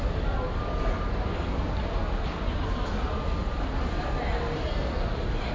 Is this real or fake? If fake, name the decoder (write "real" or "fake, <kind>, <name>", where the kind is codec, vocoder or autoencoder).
real